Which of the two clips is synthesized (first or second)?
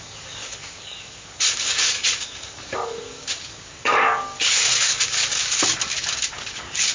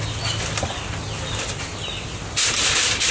first